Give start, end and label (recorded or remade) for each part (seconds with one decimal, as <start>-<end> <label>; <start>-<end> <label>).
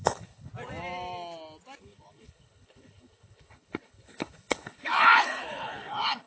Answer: 0.0-0.5 remade; 0.5-1.8 recorded; 1.8-6.3 remade